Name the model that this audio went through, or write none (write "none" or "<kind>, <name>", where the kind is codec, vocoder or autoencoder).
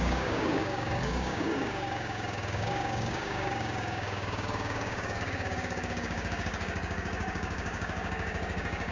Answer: codec, DAC